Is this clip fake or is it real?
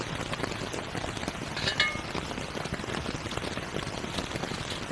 real